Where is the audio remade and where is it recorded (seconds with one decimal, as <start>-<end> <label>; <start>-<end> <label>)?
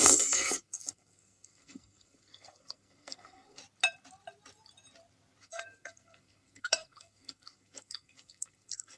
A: 0.0-3.6 remade; 3.6-5.4 recorded; 5.4-9.0 remade